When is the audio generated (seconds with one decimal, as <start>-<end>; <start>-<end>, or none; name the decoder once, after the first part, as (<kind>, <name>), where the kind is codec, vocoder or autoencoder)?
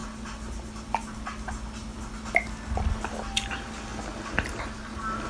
none